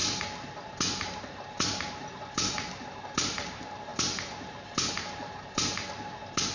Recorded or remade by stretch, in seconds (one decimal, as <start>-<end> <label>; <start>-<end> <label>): 0.0-6.5 recorded

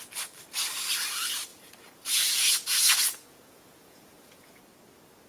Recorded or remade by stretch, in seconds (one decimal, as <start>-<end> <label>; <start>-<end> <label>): 0.0-1.5 recorded; 1.5-4.6 remade; 4.6-5.3 recorded

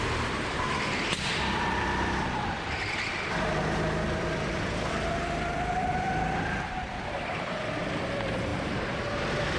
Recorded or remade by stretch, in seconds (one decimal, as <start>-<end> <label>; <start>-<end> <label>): 0.0-9.6 remade

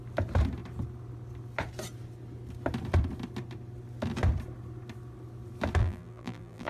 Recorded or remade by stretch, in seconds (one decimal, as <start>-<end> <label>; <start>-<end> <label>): 0.0-5.8 recorded; 5.8-6.7 remade

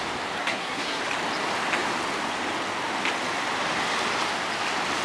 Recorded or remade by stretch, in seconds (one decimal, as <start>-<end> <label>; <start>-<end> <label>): 0.0-0.4 recorded; 0.4-1.0 remade; 1.0-5.0 recorded